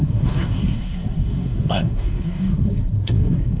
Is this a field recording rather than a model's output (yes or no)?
no